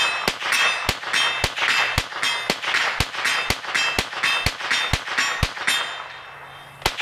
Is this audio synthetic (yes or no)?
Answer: no